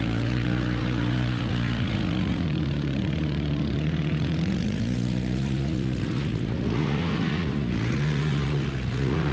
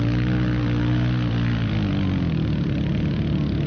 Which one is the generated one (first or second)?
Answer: first